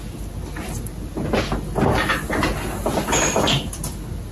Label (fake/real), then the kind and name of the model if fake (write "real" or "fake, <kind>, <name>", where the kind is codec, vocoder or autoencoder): real